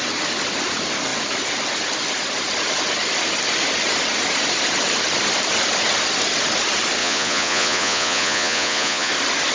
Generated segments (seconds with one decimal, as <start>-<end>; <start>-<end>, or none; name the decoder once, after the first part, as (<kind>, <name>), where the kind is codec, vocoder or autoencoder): 7.0-9.1 (vocoder, Vocos)